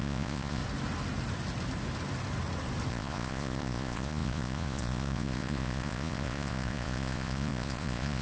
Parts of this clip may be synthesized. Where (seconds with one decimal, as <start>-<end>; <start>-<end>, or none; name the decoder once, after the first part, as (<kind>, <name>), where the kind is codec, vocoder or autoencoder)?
0.0-0.6 (vocoder, Vocos); 2.9-8.2